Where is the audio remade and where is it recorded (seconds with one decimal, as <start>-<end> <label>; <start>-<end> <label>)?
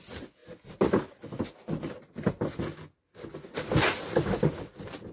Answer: 0.0-5.1 recorded